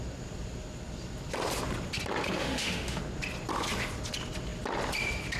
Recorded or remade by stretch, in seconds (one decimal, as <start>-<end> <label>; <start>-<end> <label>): 0.0-2.4 recorded; 2.4-3.0 remade; 3.0-5.4 recorded